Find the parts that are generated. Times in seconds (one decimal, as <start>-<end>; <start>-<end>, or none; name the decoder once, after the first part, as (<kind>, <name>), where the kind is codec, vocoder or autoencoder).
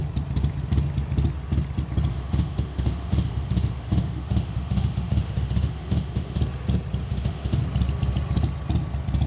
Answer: 2.1-6.4 (autoencoder, DAC-VAE); 7.0-7.6